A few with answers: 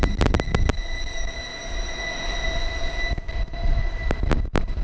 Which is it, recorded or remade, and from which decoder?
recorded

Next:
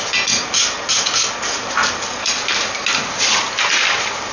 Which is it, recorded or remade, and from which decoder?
recorded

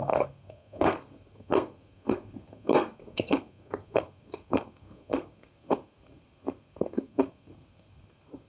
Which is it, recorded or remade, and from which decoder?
remade, codec, SNAC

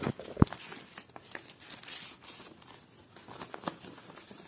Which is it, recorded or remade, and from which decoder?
recorded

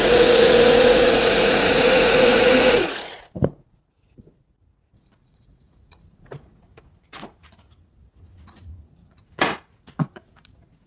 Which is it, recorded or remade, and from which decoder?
remade, vocoder, Vocos